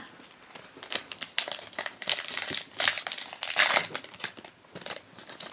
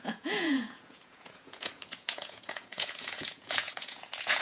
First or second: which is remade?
second